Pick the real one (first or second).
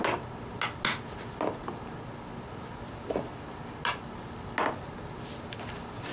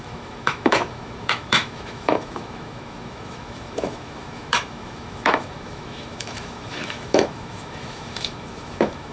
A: first